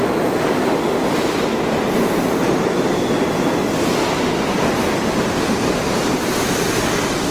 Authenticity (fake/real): real